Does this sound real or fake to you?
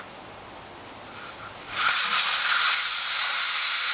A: real